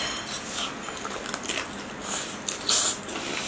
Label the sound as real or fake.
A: real